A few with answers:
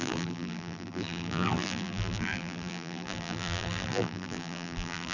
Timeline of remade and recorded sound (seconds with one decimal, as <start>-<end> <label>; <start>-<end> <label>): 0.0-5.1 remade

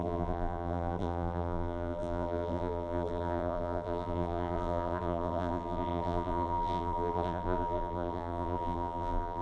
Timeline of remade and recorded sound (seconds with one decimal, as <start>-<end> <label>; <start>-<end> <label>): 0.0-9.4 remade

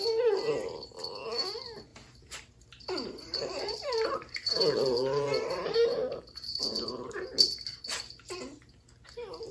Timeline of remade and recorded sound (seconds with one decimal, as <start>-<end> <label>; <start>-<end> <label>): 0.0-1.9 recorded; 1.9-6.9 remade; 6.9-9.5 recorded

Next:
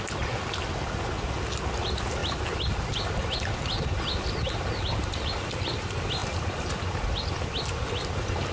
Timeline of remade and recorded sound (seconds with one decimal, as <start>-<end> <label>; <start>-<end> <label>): 0.0-6.2 recorded; 6.2-6.7 remade; 6.7-8.5 recorded